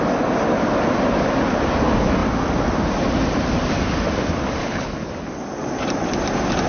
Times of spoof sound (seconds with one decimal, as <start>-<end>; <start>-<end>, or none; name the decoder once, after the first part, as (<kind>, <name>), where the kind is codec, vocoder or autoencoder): 4.6-5.1 (codec, HILCodec)